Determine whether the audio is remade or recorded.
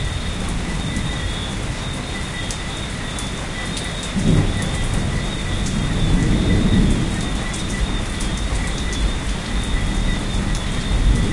recorded